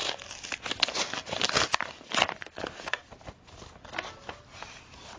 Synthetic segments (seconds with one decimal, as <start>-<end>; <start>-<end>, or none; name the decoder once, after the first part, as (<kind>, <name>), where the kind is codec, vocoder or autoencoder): none